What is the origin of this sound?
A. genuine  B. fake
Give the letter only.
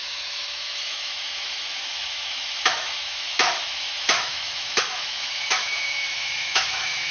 B